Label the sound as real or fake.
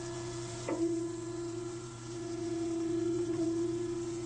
fake